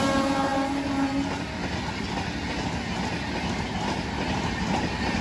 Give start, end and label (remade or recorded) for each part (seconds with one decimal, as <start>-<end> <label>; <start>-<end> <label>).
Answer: 0.0-5.2 recorded